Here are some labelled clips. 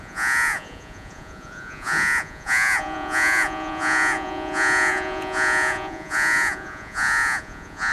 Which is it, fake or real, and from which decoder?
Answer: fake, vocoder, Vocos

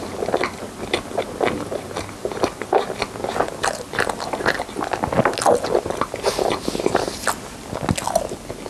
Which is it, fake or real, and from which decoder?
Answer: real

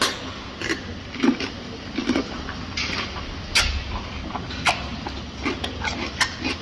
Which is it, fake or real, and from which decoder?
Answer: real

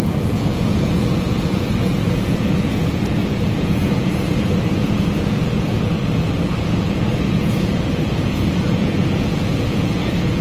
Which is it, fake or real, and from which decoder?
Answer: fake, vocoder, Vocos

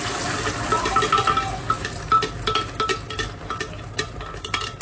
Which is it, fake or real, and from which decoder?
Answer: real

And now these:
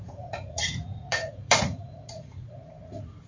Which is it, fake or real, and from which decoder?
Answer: fake, vocoder, Vocos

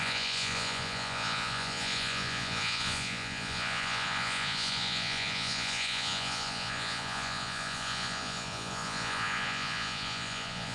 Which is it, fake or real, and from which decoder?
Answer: fake, vocoder, Vocos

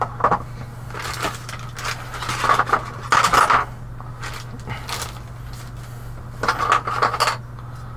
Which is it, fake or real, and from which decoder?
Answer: real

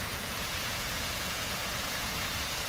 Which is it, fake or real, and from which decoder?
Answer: fake, vocoder, Vocos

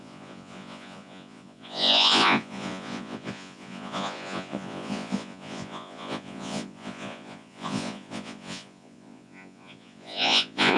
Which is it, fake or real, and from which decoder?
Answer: fake, vocoder, Vocos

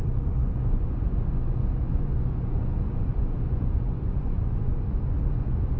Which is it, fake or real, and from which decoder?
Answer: fake, vocoder, Vocos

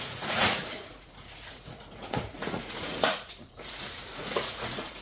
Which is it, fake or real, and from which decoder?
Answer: fake, vocoder, Vocos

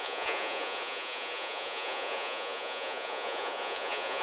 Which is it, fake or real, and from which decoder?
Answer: fake, vocoder, Vocos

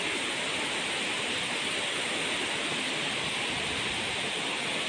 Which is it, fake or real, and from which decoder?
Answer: real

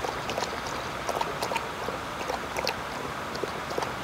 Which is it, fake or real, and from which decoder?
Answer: real